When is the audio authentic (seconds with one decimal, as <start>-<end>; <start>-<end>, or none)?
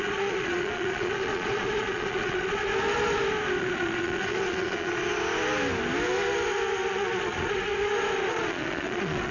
2.7-3.6; 5.0-6.9; 7.7-8.3